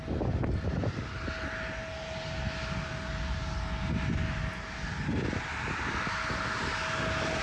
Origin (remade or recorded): recorded